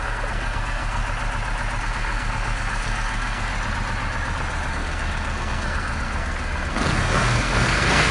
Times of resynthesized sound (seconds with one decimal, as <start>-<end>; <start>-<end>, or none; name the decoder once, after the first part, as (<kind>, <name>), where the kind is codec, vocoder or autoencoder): 0.0-1.0 (codec, SNAC); 1.8-3.5; 4.7-8.1